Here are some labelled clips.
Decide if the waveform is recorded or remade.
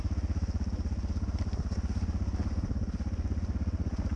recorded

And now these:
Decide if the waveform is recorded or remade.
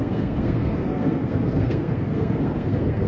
remade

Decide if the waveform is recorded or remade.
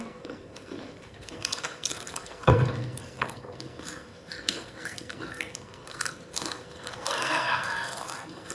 remade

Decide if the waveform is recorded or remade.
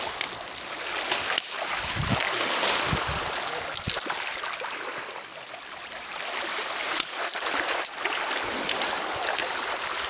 recorded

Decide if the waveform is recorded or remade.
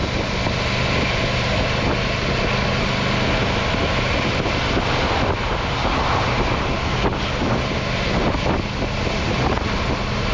recorded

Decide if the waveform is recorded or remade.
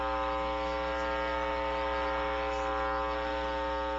recorded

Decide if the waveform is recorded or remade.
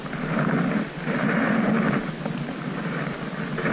recorded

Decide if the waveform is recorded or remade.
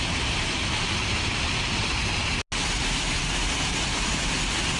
recorded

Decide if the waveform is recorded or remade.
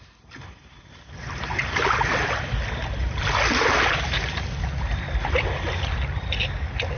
recorded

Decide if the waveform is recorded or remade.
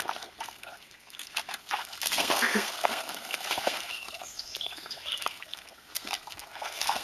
remade